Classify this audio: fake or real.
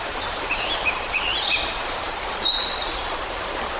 real